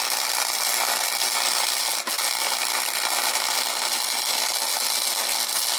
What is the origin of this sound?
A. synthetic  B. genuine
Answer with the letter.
B